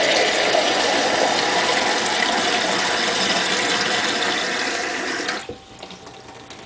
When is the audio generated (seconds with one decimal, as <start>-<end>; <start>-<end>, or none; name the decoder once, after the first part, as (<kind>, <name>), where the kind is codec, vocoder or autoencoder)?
0.6-1.1 (vocoder, Vocos)